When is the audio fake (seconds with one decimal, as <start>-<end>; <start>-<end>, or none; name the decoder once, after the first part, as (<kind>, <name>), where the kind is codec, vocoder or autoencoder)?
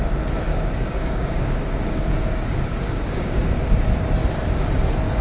0.5-3.5 (codec, DAC)